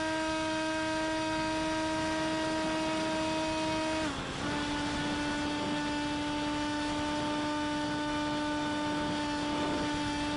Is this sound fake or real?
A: real